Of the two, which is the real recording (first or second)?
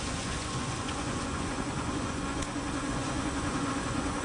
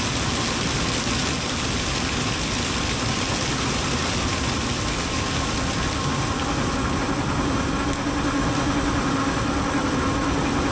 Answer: second